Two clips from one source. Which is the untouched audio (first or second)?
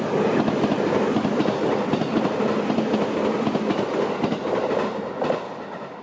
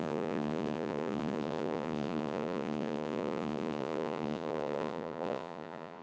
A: first